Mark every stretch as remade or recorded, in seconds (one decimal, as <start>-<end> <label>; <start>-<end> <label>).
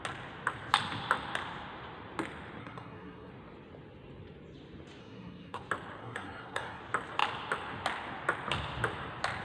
0.0-2.6 recorded; 2.6-3.3 remade; 3.3-5.0 recorded; 5.0-5.6 remade; 5.6-6.0 recorded; 6.0-6.8 remade; 6.8-9.4 recorded